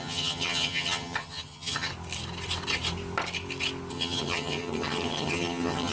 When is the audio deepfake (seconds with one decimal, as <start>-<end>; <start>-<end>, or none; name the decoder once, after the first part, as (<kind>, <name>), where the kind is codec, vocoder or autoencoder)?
0.0-1.9 (vocoder, HiFi-GAN); 3.9-5.9